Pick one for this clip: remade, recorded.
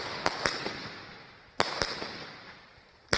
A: remade